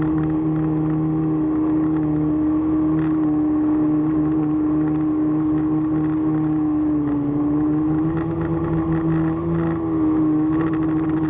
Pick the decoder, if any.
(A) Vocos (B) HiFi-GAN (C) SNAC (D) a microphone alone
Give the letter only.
D